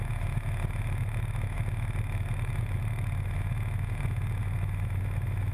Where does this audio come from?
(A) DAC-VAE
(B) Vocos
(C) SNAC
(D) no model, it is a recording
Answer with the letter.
A